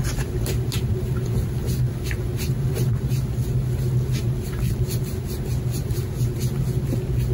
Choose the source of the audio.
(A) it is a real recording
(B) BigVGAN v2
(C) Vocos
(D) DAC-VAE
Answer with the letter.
A